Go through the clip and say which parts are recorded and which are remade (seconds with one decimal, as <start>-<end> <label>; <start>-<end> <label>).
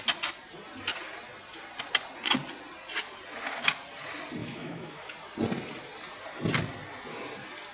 0.0-4.4 recorded; 4.4-5.1 remade; 5.1-7.7 recorded